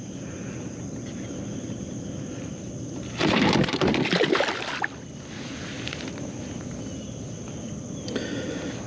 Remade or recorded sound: recorded